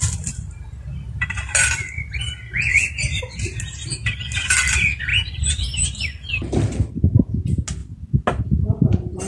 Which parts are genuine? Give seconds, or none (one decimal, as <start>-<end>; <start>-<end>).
0.0-2.7; 3.2-5.1; 6.3-9.3